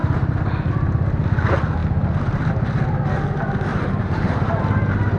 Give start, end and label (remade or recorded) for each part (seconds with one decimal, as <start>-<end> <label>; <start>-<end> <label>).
0.0-3.7 recorded; 3.7-4.6 remade; 4.6-5.2 recorded